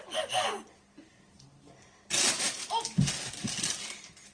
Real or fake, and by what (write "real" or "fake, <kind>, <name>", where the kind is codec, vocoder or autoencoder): real